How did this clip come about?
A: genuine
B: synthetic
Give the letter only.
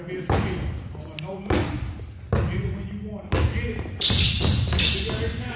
A